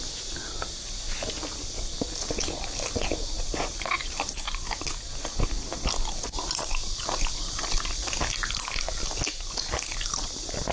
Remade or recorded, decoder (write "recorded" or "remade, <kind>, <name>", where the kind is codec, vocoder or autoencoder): recorded